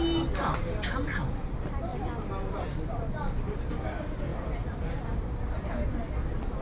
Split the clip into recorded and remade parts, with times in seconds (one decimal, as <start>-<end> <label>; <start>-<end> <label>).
0.0-4.3 recorded; 4.3-5.0 remade; 5.0-6.6 recorded